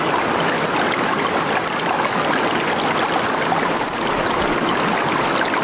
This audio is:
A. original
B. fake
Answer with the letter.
A